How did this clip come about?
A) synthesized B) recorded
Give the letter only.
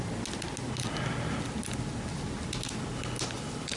B